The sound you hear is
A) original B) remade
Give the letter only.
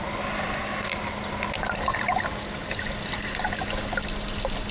A